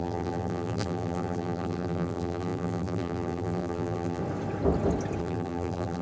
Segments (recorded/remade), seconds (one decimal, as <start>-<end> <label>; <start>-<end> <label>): 0.0-4.2 remade; 4.2-5.2 recorded; 5.2-6.0 remade